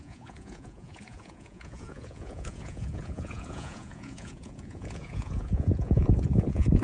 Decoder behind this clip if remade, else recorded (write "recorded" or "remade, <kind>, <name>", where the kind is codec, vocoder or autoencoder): remade, vocoder, Vocos